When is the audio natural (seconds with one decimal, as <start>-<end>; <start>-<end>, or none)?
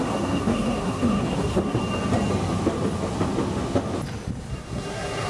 1.8-4.5